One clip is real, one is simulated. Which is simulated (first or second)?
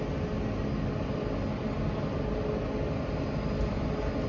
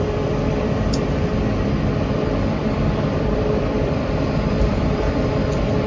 second